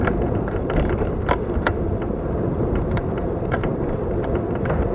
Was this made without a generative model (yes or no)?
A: no